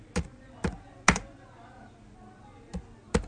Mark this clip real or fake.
real